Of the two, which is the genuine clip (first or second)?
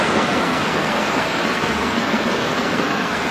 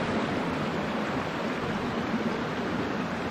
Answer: second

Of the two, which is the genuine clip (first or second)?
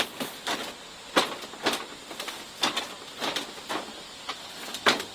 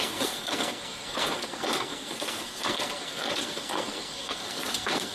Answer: first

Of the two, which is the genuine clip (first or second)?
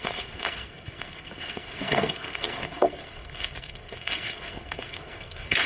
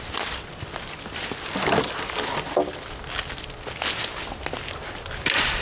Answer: second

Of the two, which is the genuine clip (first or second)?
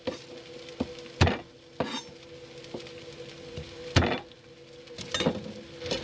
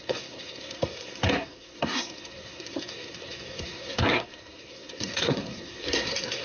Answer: first